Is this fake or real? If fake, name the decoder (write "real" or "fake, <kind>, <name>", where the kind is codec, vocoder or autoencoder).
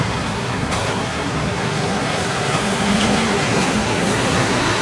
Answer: fake, codec, SNAC